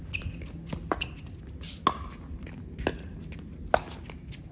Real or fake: real